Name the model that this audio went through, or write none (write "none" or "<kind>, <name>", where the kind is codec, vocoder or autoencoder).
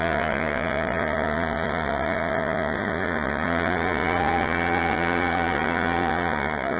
vocoder, Vocos